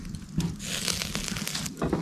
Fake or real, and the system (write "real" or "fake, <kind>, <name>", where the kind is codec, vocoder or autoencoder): real